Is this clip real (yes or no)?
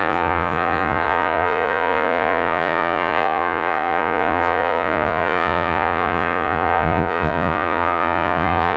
no